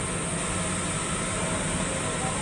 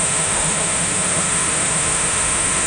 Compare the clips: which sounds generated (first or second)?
second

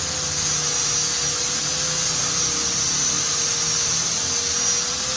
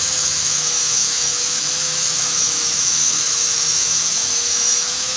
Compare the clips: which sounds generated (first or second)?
second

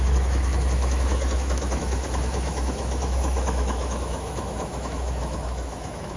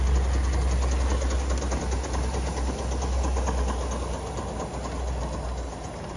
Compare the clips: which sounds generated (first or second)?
first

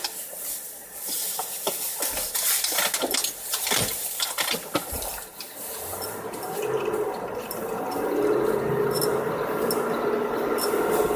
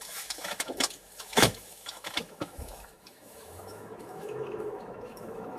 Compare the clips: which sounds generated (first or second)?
second